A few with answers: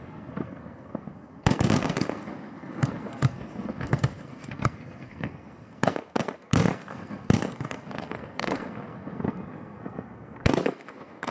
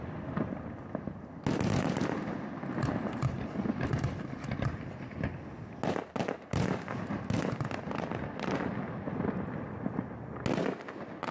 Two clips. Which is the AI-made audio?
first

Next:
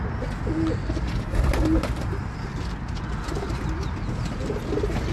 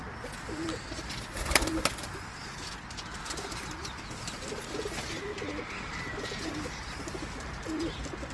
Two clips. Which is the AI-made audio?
second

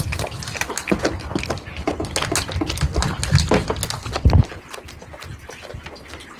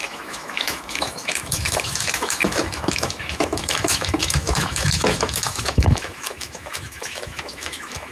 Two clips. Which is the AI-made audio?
second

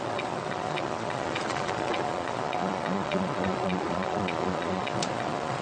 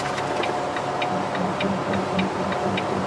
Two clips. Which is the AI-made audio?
first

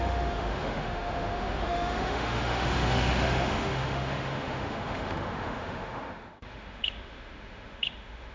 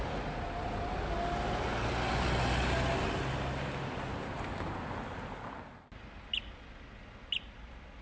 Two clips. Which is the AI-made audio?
first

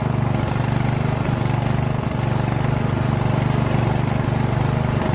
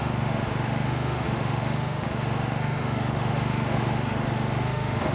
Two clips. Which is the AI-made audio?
second